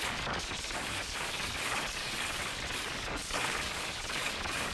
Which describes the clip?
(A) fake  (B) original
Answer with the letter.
A